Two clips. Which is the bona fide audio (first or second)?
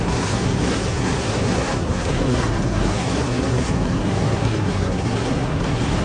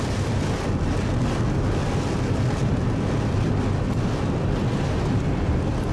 second